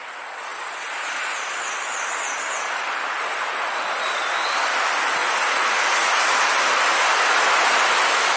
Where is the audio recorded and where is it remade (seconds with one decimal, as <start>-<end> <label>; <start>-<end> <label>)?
0.0-5.2 recorded; 5.2-6.1 remade; 6.1-8.4 recorded